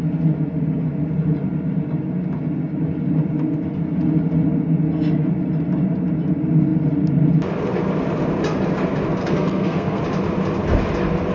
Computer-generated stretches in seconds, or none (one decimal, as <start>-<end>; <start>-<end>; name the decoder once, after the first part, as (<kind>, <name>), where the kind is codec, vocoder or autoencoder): 9.2-10.0 (codec, SNAC)